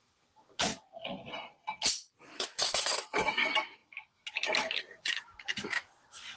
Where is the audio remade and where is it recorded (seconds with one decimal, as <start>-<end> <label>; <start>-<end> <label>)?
0.0-0.7 remade; 0.7-2.2 recorded; 2.2-6.4 remade